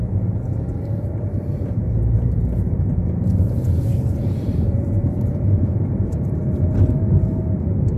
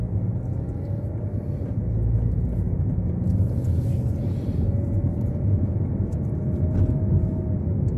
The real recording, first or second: second